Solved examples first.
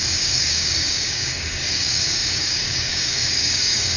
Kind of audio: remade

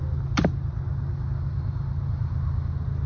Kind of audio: recorded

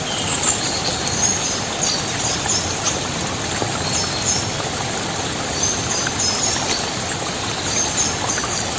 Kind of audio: recorded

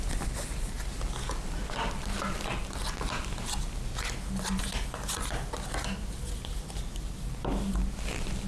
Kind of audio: recorded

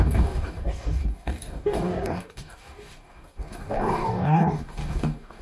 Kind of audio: remade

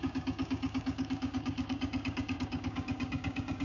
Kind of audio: remade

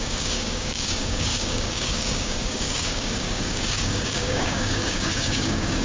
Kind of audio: remade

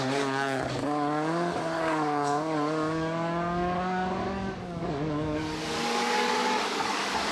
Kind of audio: remade